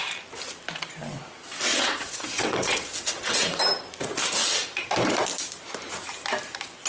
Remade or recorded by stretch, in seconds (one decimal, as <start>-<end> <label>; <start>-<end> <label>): 0.0-1.7 recorded; 1.7-3.6 remade; 3.6-4.4 recorded; 4.4-4.9 remade; 4.9-6.9 recorded